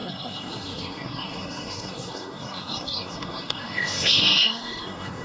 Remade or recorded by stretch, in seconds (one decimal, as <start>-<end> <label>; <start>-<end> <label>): 0.0-5.2 remade